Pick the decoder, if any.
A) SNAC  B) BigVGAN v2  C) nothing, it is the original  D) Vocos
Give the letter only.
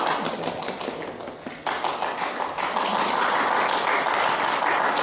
C